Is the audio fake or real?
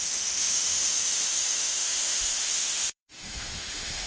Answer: fake